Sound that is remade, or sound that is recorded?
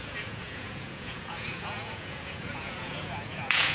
remade